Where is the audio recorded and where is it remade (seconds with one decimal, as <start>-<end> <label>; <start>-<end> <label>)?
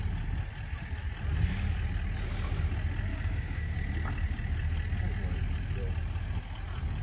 0.0-3.1 recorded; 3.1-3.8 remade; 3.8-7.0 recorded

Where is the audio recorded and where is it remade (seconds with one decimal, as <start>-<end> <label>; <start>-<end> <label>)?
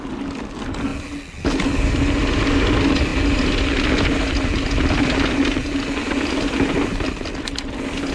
0.0-8.1 recorded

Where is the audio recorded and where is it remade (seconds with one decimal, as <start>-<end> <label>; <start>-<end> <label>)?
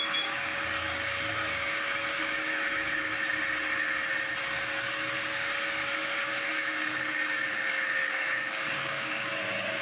0.0-3.1 remade; 3.1-4.4 recorded; 4.4-9.8 remade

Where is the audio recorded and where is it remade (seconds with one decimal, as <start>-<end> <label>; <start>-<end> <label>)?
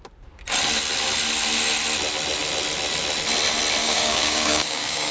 0.0-3.8 recorded; 3.8-5.1 remade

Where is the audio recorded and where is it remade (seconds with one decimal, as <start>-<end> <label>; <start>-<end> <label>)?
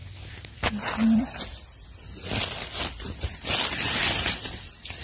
0.0-5.0 recorded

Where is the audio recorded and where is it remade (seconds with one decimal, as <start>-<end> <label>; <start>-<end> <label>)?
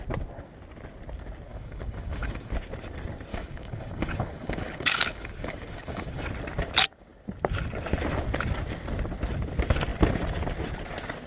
0.0-1.5 recorded; 1.5-2.5 remade; 2.5-3.3 recorded; 3.3-6.2 remade; 6.2-11.3 recorded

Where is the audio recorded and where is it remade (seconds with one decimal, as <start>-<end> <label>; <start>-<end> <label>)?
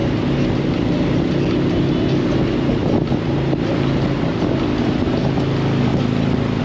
0.0-6.6 recorded